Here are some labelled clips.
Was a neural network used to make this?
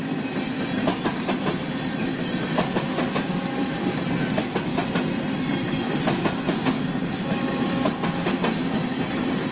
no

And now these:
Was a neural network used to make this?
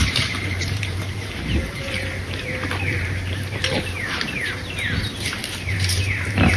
yes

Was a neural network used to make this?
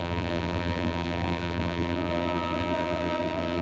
yes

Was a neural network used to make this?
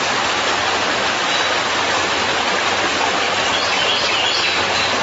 no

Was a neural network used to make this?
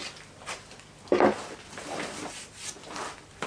no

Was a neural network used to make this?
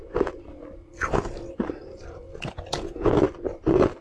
no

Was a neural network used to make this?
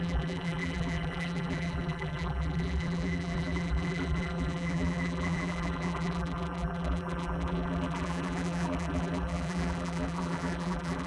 yes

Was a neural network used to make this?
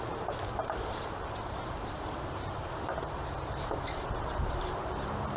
yes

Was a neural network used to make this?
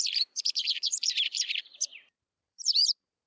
yes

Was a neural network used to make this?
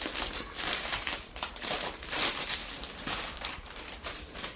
yes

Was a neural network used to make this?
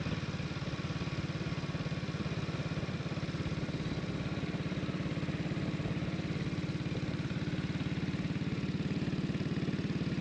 yes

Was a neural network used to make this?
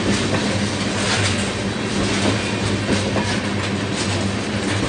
no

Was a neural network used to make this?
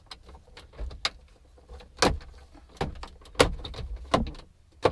no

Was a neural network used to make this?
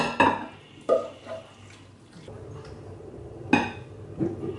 no